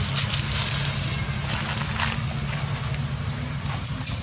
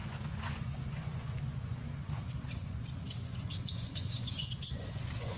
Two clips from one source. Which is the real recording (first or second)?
first